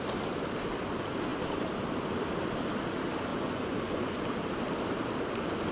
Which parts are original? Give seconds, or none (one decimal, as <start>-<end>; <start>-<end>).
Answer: 0.0-3.3; 4.2-5.7